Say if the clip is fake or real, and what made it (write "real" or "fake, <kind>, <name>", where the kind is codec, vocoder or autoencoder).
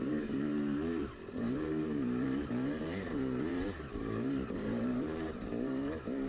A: fake, vocoder, BigVGAN v2